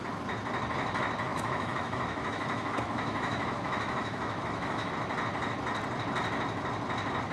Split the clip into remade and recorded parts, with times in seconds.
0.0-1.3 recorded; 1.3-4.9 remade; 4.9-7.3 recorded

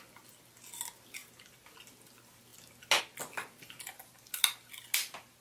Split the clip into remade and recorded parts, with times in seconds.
0.0-5.4 recorded

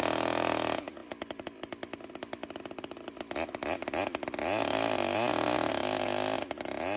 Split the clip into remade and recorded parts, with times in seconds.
0.0-7.0 recorded

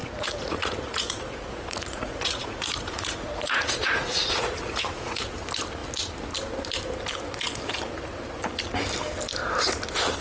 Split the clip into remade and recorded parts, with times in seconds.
0.0-5.3 remade; 5.3-10.2 recorded

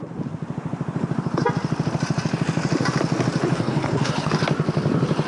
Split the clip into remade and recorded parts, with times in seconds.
0.0-3.5 recorded; 3.5-4.3 remade; 4.3-5.3 recorded

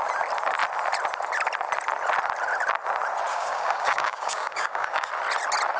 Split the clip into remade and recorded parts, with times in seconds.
0.0-3.3 recorded; 3.3-5.1 remade; 5.1-5.8 recorded

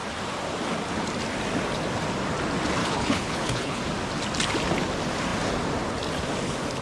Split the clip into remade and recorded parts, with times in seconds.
0.0-2.8 recorded; 2.8-3.8 remade; 3.8-6.8 recorded